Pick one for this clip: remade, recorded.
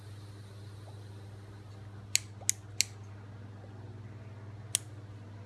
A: recorded